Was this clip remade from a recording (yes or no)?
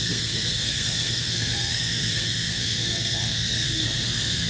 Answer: yes